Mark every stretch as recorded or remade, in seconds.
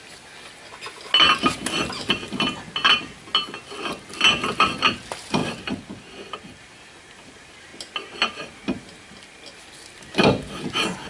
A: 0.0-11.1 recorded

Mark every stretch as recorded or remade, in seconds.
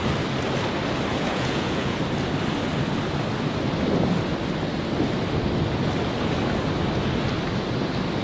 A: 0.0-1.1 recorded; 1.1-2.0 remade; 2.0-8.2 recorded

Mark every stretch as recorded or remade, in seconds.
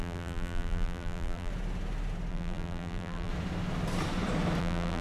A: 0.0-1.5 remade; 1.5-2.3 recorded; 2.3-3.3 remade; 3.3-4.6 recorded; 4.6-5.0 remade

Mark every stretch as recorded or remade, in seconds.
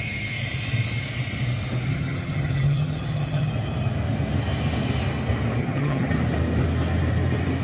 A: 0.0-1.9 recorded; 1.9-3.5 remade; 3.5-5.6 recorded; 5.6-6.1 remade; 6.1-7.6 recorded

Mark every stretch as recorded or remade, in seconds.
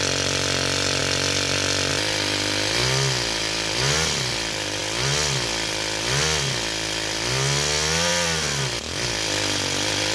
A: 0.0-10.1 recorded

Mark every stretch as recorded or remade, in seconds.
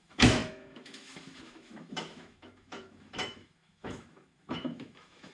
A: 0.0-5.3 remade